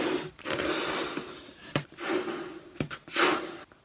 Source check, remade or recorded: recorded